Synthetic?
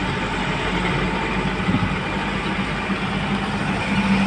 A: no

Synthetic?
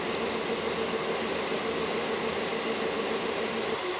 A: no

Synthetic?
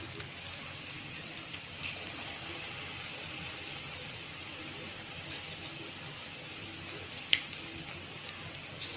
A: yes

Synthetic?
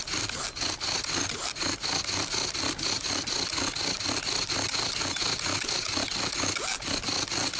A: no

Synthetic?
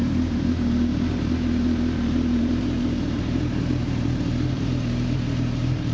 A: yes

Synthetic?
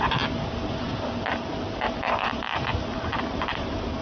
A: no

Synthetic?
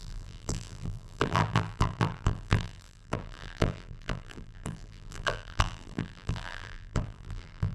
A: yes